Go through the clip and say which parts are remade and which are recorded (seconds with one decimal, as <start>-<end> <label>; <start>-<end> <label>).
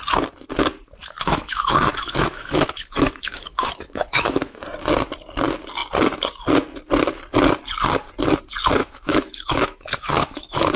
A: 0.0-1.0 recorded; 1.0-4.6 remade; 4.6-8.8 recorded; 8.8-10.8 remade